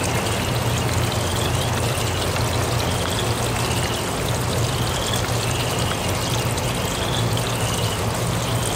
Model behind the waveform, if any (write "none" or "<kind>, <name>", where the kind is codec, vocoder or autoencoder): none